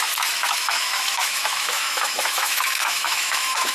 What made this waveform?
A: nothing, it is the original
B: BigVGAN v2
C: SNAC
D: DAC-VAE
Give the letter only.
D